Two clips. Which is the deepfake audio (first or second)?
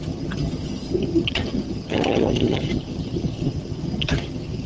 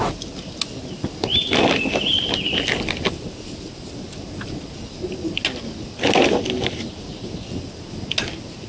first